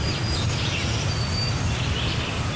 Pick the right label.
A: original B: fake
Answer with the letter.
A